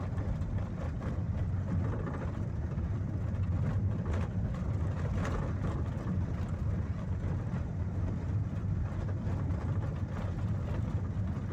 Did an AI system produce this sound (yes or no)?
no